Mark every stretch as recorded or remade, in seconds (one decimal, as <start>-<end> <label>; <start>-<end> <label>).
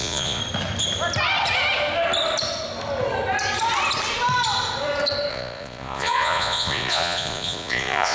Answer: 0.0-0.4 remade; 0.4-5.3 recorded; 5.3-8.1 remade